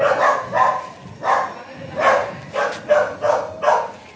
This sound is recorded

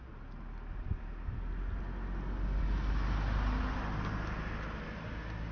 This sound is recorded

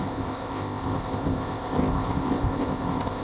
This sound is remade